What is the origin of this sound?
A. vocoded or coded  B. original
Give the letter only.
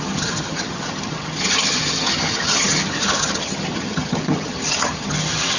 A